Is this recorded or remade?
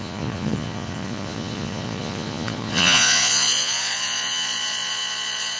remade